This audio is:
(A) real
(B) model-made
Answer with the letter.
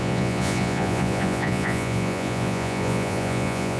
B